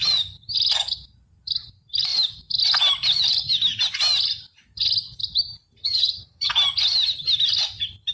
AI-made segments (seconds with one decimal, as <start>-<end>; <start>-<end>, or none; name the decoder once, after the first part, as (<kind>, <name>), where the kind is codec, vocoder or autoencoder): 5.8-6.5 (vocoder, HiFi-GAN)